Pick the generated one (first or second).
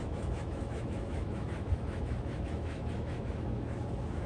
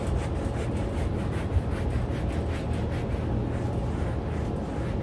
first